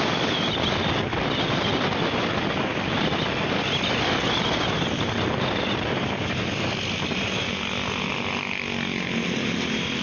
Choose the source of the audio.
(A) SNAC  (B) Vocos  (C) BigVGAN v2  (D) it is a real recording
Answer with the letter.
D